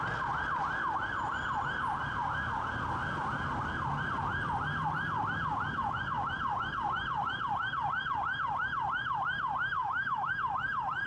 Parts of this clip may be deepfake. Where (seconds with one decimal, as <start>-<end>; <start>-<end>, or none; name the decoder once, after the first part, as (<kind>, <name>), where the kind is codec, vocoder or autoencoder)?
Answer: 9.8-10.3 (autoencoder, DAC-VAE)

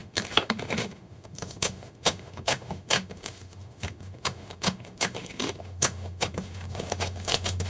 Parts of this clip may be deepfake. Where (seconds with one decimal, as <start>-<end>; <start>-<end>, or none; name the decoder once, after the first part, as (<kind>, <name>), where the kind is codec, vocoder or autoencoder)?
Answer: 0.0-7.7 (autoencoder, DAC-VAE)

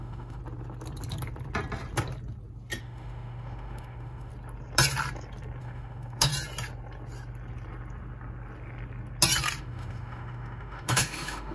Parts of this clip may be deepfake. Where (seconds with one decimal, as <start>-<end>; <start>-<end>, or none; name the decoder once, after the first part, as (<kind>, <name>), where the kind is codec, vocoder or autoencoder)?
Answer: 0.0-0.4 (autoencoder, DAC-VAE); 2.8-4.3; 5.6-6.3; 9.6-11.5